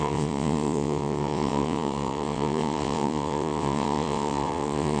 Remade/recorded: remade